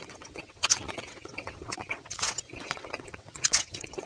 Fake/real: fake